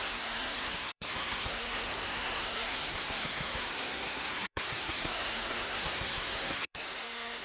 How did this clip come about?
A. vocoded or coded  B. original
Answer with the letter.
A